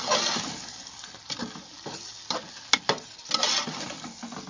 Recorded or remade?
recorded